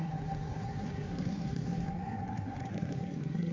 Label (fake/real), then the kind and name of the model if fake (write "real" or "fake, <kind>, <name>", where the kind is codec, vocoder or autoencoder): fake, codec, SNAC